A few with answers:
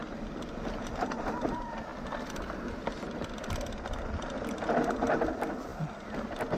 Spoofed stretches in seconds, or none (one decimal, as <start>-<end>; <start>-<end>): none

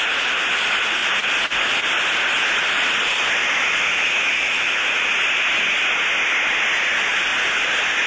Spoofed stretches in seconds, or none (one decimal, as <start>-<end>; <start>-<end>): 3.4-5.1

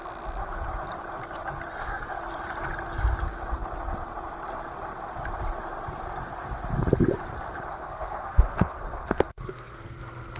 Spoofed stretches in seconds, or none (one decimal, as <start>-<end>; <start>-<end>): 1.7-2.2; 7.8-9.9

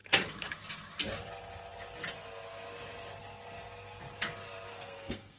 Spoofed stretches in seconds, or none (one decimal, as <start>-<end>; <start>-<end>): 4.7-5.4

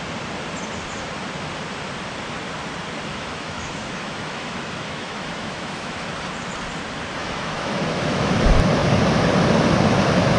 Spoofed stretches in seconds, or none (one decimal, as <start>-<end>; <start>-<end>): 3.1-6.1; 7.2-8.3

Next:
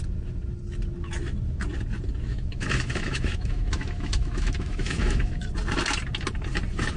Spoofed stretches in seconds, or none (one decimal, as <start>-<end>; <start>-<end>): 2.3-5.5

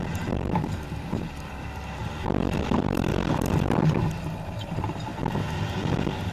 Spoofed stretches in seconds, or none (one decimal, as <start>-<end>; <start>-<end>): 0.0-2.0; 2.6-3.1; 4.3-5.1; 5.7-6.3